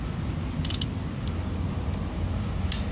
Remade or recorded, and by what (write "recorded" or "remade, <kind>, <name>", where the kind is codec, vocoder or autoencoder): recorded